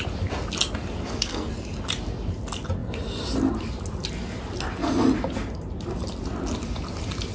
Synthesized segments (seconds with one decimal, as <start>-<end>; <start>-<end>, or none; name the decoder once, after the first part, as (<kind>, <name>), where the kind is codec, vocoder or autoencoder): 1.0-1.5 (codec, SNAC)